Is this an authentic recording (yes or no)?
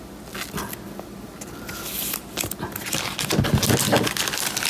yes